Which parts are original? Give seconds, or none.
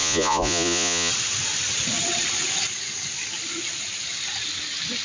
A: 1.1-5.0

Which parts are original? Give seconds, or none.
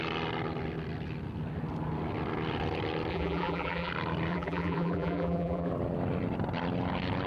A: 0.0-3.1; 3.9-4.3; 5.7-7.3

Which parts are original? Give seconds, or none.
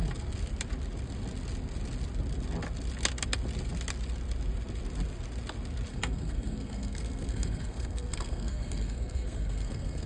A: 0.0-5.9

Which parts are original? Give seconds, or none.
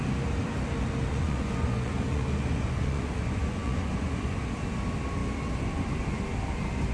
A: 0.0-1.1; 4.4-6.9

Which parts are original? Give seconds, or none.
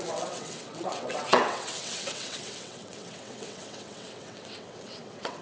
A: none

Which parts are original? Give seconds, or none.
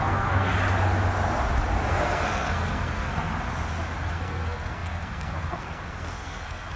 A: 0.5-1.9; 3.3-4.1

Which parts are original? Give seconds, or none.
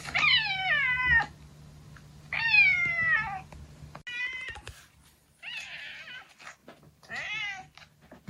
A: 0.0-8.3